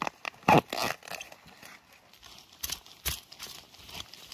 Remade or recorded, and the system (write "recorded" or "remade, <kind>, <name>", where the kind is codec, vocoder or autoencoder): recorded